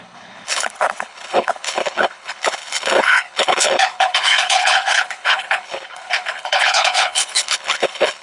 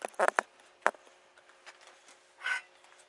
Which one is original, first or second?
second